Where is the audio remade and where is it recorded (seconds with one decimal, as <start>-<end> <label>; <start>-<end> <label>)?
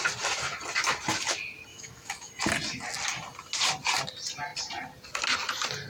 0.0-1.7 recorded; 1.7-2.3 remade; 2.3-5.9 recorded